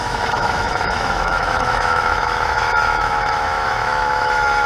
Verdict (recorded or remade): remade